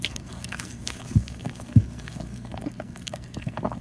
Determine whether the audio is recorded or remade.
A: remade